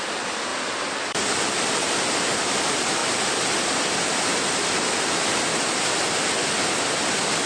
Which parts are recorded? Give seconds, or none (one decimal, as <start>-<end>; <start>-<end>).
0.0-7.5